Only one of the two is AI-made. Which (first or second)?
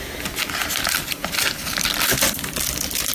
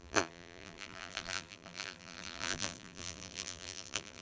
second